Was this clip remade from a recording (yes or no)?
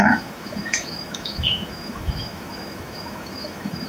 yes